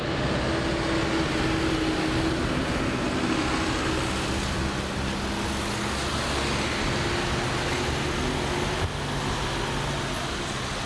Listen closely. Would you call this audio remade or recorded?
recorded